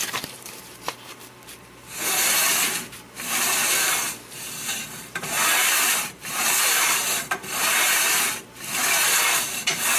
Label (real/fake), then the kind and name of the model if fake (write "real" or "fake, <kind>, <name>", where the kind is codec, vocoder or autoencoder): fake, vocoder, BigVGAN v2